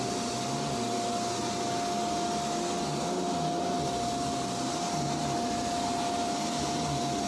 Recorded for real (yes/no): yes